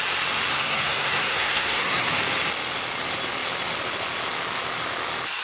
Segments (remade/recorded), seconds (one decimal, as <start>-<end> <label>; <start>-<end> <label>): 0.0-0.5 recorded; 0.5-2.1 remade; 2.1-5.4 recorded

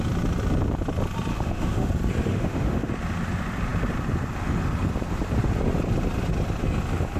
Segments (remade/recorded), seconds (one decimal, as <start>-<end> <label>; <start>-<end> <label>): 0.0-1.3 recorded; 1.3-1.9 remade; 1.9-2.3 recorded; 2.3-2.9 remade; 2.9-7.2 recorded

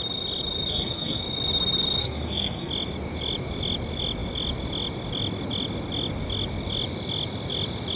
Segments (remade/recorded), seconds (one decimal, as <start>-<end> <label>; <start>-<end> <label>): 0.0-0.7 recorded; 0.7-1.2 remade; 1.2-2.0 recorded; 2.0-2.7 remade; 2.7-8.0 recorded

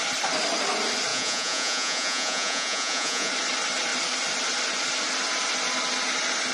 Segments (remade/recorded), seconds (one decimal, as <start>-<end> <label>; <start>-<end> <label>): 0.0-1.1 recorded; 1.1-3.3 remade; 3.3-6.5 recorded

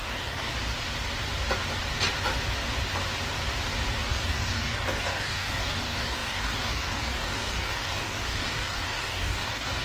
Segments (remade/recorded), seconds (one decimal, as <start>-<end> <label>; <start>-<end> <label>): 0.0-0.5 remade; 0.5-4.1 recorded; 4.1-9.8 remade

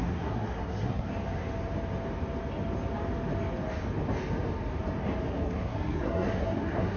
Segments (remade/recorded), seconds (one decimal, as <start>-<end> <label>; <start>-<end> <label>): 0.0-1.1 remade; 1.1-5.3 recorded; 5.3-7.0 remade